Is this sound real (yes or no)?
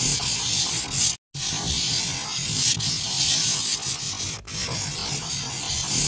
yes